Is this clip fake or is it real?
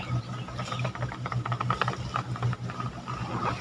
real